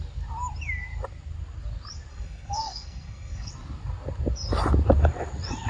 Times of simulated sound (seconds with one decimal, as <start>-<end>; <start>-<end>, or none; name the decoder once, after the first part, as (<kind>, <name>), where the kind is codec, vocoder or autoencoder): 2.1-3.5 (codec, SNAC)